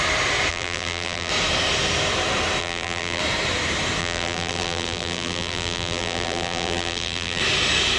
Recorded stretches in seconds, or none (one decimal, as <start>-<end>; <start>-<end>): 0.0-0.5; 1.3-2.6; 3.2-4.0; 7.4-8.0